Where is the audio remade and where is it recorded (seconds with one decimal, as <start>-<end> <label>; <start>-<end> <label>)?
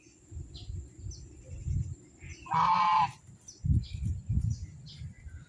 0.0-5.5 recorded